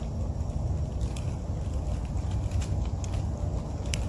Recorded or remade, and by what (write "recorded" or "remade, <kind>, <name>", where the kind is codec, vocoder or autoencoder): recorded